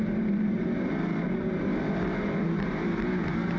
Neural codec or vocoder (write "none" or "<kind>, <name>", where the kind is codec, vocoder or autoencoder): vocoder, BigVGAN v2